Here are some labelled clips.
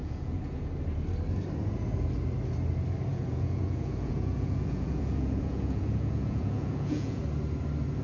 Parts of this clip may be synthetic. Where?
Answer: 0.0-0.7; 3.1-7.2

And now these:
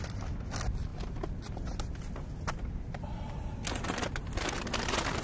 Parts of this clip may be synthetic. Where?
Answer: none

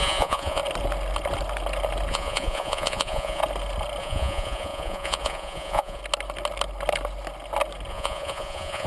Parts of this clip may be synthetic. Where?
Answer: 0.0-0.6; 2.1-3.4; 4.0-6.0; 7.9-8.9

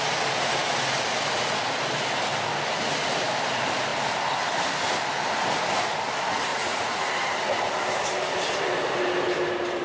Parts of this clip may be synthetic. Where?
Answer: 6.5-7.1

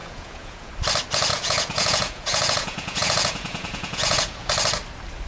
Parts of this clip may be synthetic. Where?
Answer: 0.0-0.7; 1.3-4.5

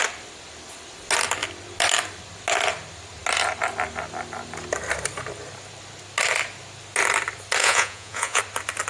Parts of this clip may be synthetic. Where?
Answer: 7.6-8.4